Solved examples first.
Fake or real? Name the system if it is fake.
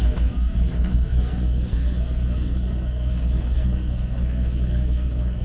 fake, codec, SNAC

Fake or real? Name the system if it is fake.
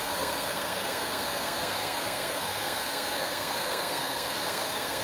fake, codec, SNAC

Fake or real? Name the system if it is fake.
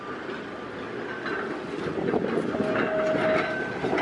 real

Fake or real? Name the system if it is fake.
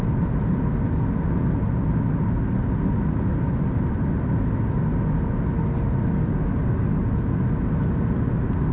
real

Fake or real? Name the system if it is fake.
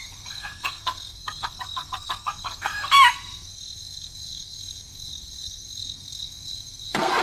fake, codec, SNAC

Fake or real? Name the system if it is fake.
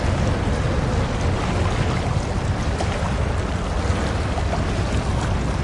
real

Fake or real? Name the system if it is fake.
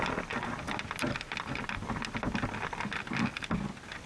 real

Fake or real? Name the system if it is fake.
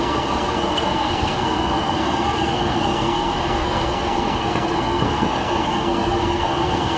fake, codec, SNAC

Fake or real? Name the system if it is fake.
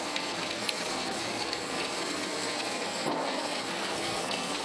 fake, codec, SNAC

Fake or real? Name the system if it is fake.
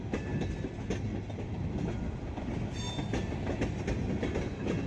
real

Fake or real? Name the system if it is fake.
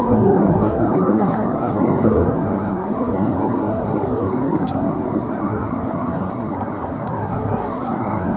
fake, codec, SNAC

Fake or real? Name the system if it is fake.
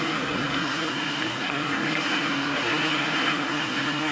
fake, codec, SNAC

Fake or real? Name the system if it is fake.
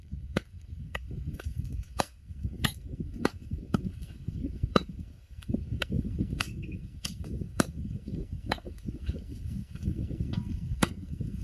fake, codec, SNAC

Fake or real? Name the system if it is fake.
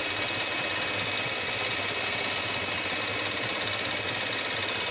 real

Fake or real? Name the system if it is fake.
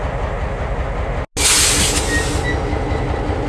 real